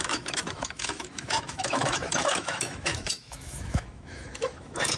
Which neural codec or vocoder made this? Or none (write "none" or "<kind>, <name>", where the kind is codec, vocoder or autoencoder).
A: autoencoder, DAC-VAE